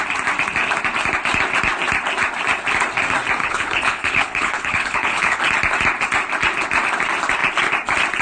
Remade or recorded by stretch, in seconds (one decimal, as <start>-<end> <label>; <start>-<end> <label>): 0.0-3.4 recorded; 3.4-5.4 remade; 5.4-8.2 recorded